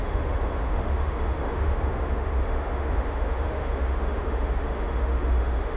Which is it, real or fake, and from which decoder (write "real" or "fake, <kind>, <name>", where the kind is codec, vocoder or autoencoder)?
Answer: fake, autoencoder, DAC-VAE